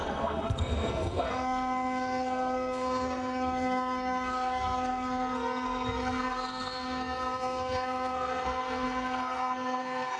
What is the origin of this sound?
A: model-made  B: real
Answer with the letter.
A